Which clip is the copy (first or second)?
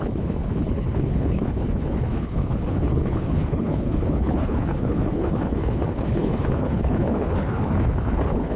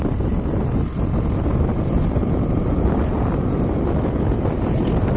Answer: first